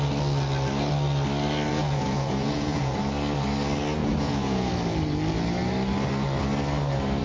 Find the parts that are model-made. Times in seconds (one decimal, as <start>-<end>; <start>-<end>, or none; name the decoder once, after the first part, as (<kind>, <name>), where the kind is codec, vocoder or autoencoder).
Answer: 1.7-3.0 (vocoder, Vocos); 4.0-4.7